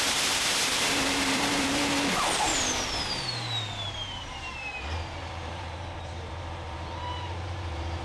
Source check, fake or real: fake